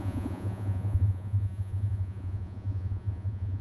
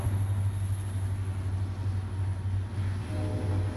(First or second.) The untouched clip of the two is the second